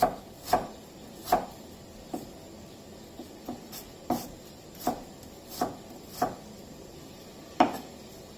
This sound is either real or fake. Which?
real